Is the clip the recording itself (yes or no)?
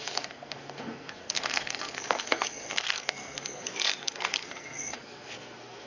no